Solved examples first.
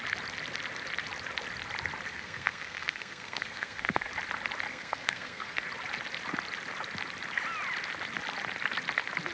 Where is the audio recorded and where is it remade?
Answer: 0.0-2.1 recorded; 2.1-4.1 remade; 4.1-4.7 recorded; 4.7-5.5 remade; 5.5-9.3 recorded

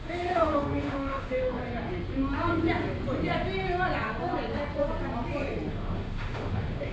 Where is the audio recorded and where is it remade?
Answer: 0.0-1.6 remade; 1.6-5.7 recorded; 5.7-6.9 remade

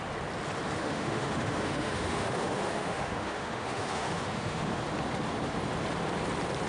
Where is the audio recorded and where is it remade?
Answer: 0.0-0.8 recorded; 0.8-4.8 remade; 4.8-6.7 recorded

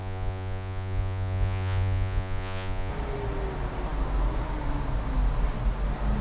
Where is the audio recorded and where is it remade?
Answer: 0.0-2.9 remade; 2.9-6.2 recorded

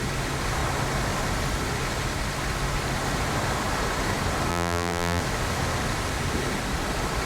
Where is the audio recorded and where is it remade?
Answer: 0.0-4.5 recorded; 4.5-5.2 remade; 5.2-7.3 recorded

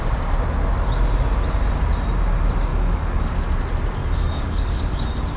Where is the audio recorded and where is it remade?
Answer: 0.0-2.7 recorded; 2.7-3.2 remade; 3.2-4.0 recorded; 4.0-4.8 remade; 4.8-5.4 recorded